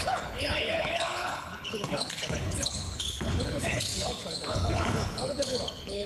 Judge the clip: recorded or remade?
remade